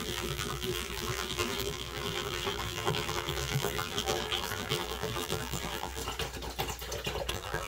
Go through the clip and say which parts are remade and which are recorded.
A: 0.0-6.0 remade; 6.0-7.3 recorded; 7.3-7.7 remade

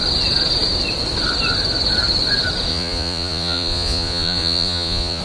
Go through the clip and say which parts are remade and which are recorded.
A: 0.0-2.7 recorded; 2.7-5.2 remade

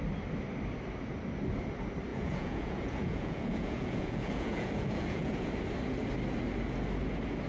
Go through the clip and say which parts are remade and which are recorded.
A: 0.0-2.1 recorded; 2.1-5.5 remade; 5.5-7.5 recorded